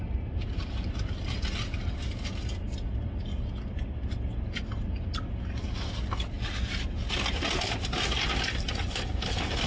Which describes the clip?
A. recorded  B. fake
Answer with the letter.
A